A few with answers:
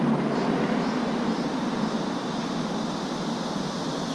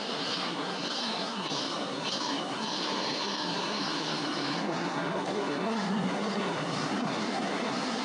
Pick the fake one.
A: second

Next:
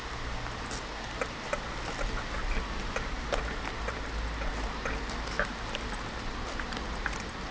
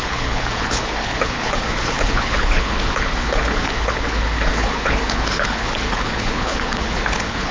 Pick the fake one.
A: second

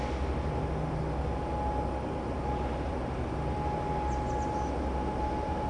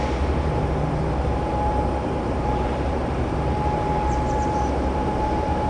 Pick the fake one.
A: second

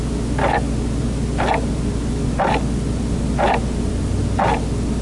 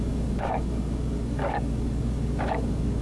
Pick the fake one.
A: second